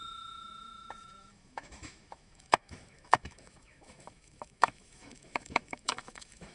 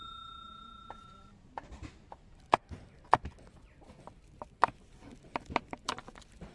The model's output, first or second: first